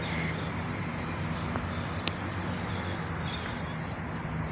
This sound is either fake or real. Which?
real